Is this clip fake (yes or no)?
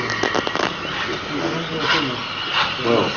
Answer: no